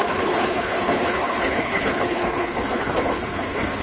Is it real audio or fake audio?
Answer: fake